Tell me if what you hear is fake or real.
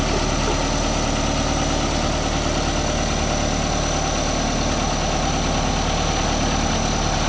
real